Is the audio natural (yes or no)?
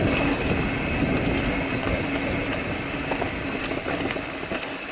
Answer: yes